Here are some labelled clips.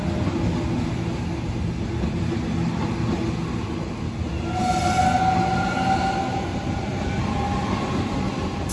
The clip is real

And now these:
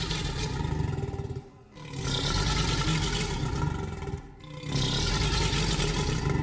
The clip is real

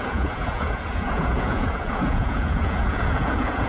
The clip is fake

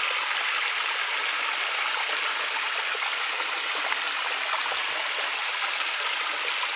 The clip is real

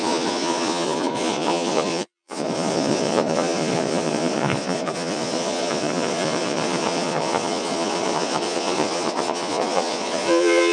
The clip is fake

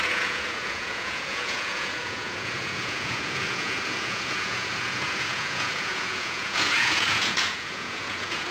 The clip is fake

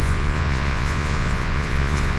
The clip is fake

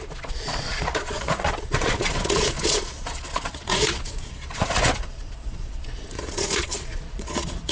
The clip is fake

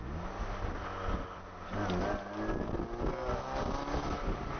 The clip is real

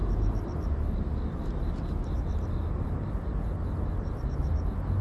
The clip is real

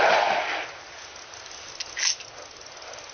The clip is real